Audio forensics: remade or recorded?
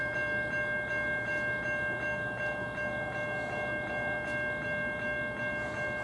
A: recorded